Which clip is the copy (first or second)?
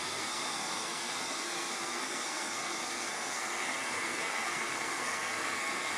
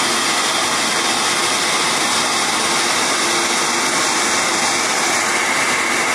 first